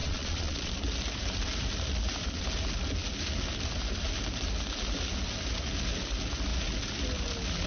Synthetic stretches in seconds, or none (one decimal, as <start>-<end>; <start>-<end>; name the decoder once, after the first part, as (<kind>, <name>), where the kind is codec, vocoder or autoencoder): 0.0-0.7 (vocoder, Vocos)